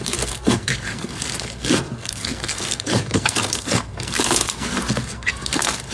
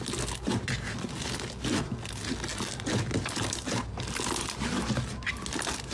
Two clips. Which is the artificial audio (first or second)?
first